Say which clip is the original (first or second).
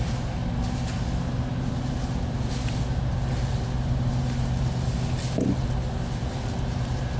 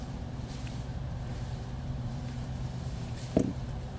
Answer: first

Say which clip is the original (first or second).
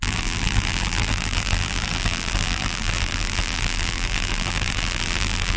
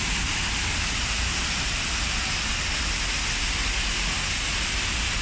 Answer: second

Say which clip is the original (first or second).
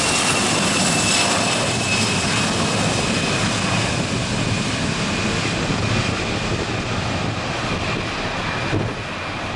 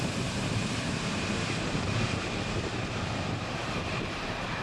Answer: first